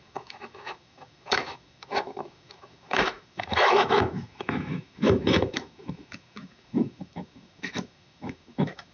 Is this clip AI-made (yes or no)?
yes